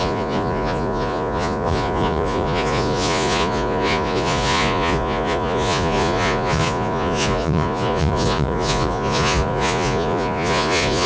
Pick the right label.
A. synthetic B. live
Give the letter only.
A